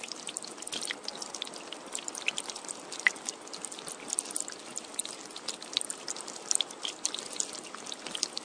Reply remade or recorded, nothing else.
recorded